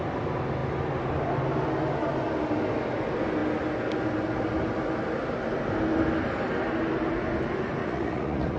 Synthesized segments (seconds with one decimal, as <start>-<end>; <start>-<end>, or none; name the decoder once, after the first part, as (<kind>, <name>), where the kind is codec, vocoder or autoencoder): 7.8-8.6 (vocoder, Vocos)